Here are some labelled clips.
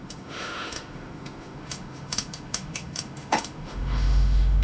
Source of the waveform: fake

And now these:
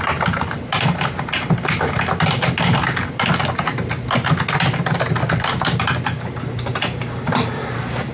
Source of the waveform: real